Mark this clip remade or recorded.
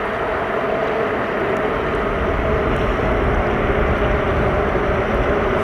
recorded